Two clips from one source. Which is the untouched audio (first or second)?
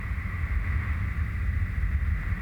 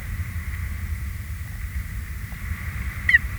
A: first